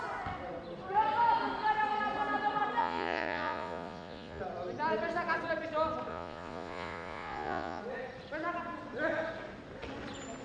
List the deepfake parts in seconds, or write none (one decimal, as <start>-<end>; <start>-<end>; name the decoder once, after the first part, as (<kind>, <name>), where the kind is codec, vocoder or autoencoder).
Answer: 2.8-4.4 (vocoder, Vocos); 6.1-7.8